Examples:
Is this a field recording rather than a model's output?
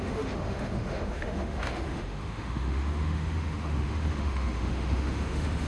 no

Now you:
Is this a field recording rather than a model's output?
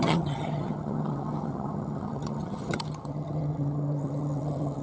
no